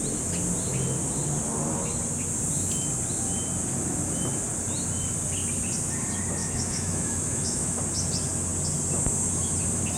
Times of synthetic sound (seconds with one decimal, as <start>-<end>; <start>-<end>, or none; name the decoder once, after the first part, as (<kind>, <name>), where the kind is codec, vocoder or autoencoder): 6.4-7.8 (autoencoder, DAC-VAE)